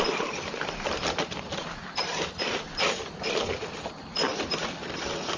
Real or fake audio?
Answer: real